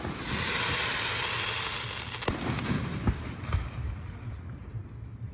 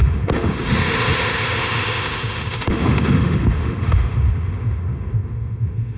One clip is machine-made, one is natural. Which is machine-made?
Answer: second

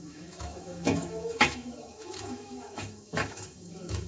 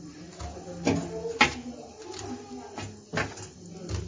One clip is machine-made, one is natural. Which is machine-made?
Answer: first